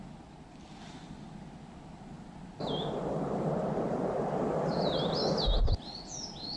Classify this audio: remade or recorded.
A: recorded